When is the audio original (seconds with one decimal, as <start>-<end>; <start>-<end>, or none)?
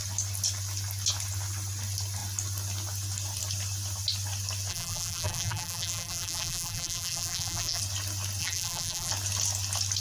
0.0-4.7; 7.8-8.4; 9.1-10.0